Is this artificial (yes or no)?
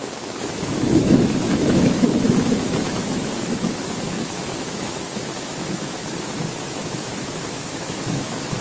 yes